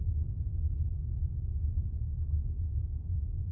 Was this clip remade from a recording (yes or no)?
no